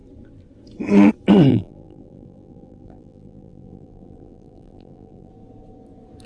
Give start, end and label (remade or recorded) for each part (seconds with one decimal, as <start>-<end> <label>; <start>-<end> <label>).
0.0-1.5 recorded; 1.5-5.3 remade; 5.3-6.3 recorded